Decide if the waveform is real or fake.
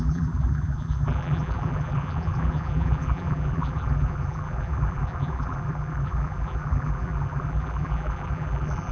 fake